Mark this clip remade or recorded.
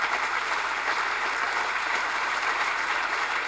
remade